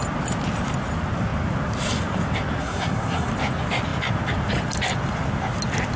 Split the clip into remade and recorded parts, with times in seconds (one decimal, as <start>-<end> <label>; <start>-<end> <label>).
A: 0.0-2.6 recorded; 2.6-3.3 remade; 3.3-6.0 recorded